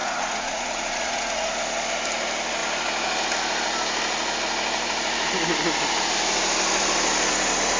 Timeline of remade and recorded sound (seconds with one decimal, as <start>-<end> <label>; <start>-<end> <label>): 0.0-1.5 remade; 1.5-7.8 recorded